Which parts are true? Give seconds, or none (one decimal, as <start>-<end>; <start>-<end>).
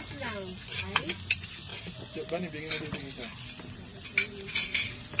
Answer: 0.0-5.2